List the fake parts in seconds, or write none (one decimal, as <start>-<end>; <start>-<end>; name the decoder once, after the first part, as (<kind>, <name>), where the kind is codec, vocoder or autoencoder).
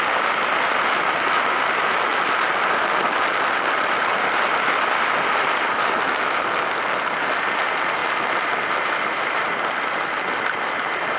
none